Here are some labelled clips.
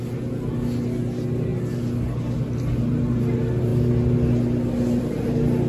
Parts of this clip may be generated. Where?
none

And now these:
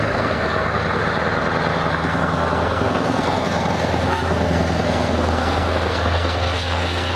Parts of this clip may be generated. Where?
0.0-1.0 (codec, SNAC); 1.9-7.2

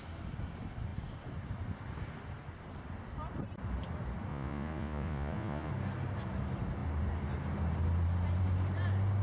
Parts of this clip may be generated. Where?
4.3-5.7 (vocoder, Vocos)

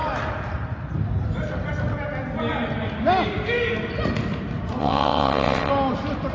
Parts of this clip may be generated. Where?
4.8-5.7 (vocoder, WaveNeXt)

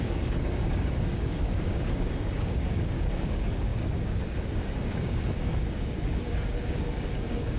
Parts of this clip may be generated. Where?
0.0-7.6 (codec, DAC)

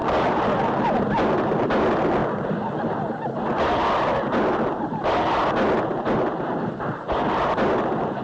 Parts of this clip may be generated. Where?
none

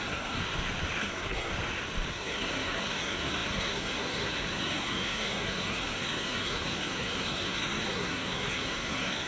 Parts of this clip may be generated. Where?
0.0-0.4 (codec, SNAC); 1.0-1.5; 2.1-9.3

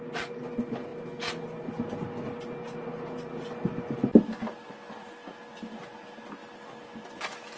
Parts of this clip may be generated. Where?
none